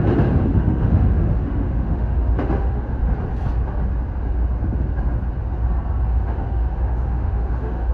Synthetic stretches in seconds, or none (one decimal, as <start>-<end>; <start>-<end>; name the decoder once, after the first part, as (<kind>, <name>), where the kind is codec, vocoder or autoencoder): 0.5-3.0 (autoencoder, DAC-VAE); 6.1-7.9